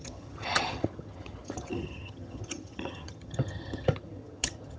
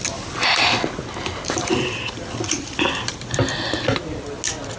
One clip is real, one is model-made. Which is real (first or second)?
second